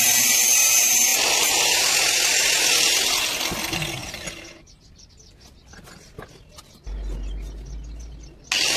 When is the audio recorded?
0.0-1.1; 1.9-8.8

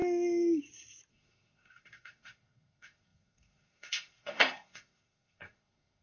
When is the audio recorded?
0.0-1.1

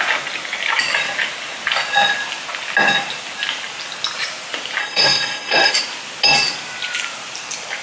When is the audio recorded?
0.0-4.8; 5.7-7.8

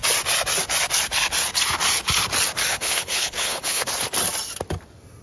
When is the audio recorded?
0.0-2.7; 3.9-5.2